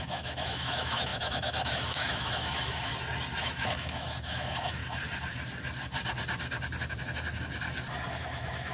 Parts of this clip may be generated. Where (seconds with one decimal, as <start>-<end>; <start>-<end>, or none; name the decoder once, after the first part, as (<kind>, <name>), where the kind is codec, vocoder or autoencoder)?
0.0-2.9 (autoencoder, DAC-VAE); 3.4-4.8; 8.1-8.7